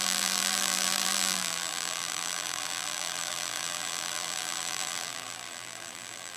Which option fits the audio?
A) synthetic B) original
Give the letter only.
A